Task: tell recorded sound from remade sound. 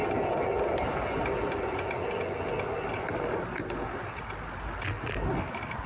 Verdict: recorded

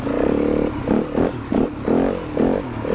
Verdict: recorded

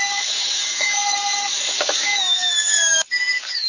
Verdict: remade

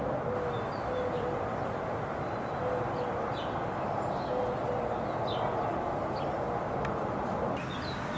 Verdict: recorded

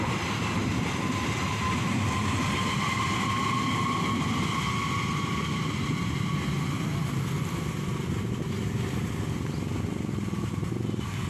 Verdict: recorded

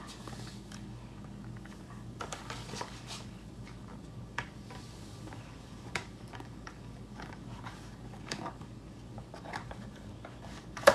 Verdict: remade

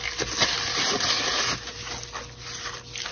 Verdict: recorded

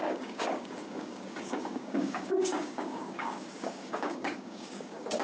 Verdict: remade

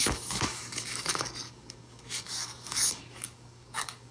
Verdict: remade